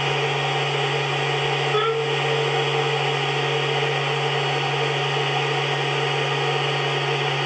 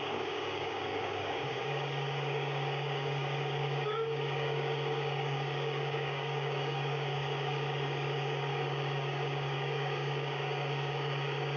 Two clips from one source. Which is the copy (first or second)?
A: second